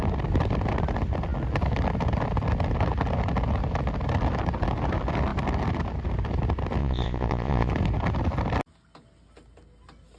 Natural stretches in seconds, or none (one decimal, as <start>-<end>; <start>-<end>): 0.0-6.8; 7.7-10.2

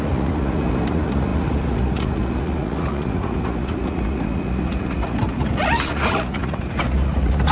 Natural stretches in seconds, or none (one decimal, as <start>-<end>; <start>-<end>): none

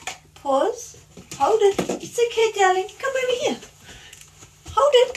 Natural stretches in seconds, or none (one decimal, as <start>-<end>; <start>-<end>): 0.0-2.4; 4.3-5.2

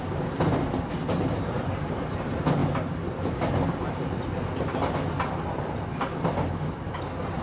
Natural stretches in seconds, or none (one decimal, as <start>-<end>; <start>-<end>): 0.0-7.4

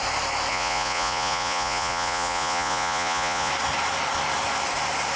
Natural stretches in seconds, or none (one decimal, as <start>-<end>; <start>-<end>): 0.0-0.5; 3.5-5.2